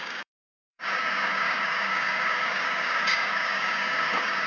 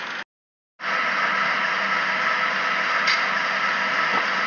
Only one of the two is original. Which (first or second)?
second